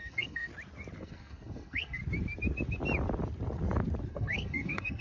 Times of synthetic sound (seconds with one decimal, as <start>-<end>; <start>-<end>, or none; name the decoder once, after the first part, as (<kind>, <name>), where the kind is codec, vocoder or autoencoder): 0.0-0.5 (codec, SNAC); 1.0-2.0; 4.1-5.0